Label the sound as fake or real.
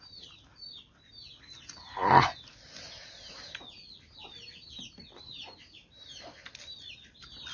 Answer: real